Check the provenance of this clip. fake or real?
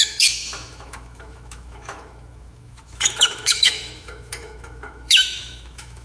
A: fake